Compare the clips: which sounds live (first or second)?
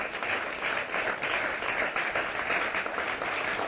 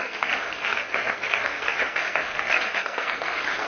first